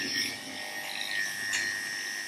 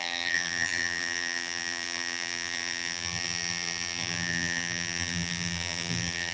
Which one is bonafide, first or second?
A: first